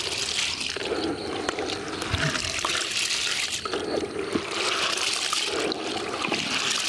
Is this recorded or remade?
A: recorded